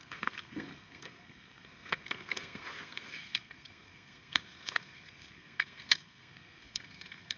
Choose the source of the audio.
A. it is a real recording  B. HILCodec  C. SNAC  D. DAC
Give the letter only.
C